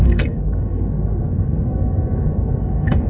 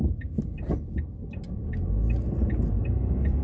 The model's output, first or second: first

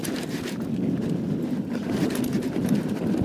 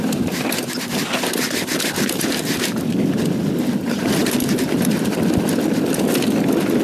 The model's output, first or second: second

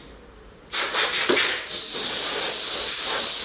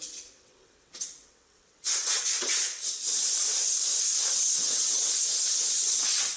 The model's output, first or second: second